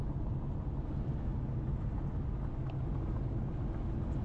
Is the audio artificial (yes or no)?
no